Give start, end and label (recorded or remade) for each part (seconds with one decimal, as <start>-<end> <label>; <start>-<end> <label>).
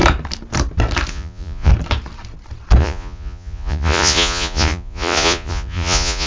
0.0-1.1 recorded; 1.1-1.7 remade; 1.7-2.8 recorded; 2.8-6.3 remade